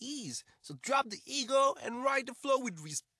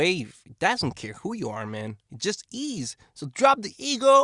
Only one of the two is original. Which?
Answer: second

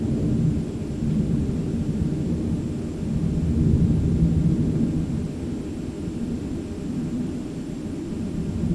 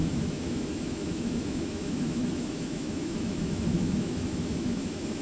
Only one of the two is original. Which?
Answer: first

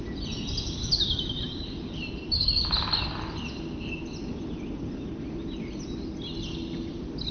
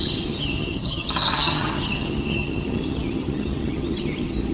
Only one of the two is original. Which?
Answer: first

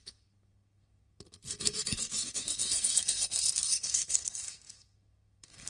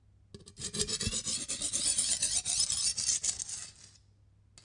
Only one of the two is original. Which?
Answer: second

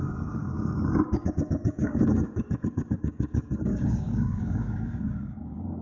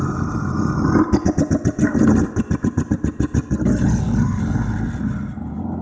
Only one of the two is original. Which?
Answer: second